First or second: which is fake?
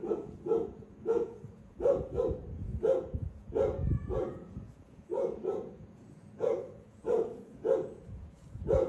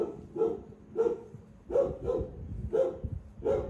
first